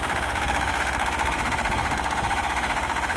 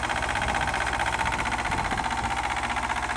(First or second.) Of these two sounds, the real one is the second